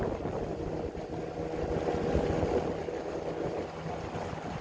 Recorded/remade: recorded